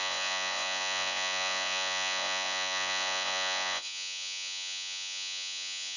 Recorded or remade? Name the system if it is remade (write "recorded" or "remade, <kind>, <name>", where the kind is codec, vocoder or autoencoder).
remade, vocoder, Vocos